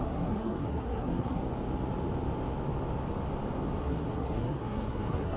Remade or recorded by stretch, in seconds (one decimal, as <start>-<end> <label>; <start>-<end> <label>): 0.0-1.4 remade; 1.4-3.8 recorded; 3.8-5.4 remade

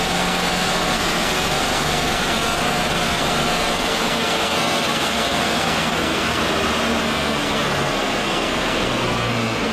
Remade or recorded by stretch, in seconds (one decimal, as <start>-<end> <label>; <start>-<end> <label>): 0.0-6.4 remade; 6.4-7.0 recorded; 7.0-9.7 remade

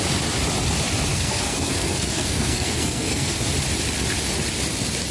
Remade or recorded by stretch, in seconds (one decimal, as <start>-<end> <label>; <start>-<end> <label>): 0.0-1.1 recorded; 1.1-3.3 remade; 3.3-5.1 recorded